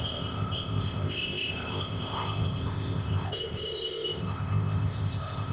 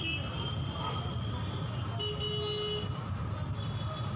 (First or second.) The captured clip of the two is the second